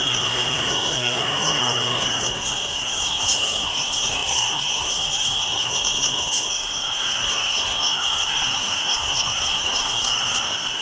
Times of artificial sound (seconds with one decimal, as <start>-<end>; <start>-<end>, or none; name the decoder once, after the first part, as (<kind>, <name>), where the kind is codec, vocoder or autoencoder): 0.0-10.8 (codec, SNAC)